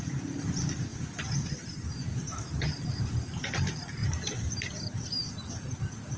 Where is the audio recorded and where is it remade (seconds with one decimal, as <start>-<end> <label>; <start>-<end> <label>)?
0.0-4.0 recorded; 4.0-5.1 remade; 5.1-6.2 recorded